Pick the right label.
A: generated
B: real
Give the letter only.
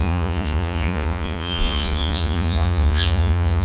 A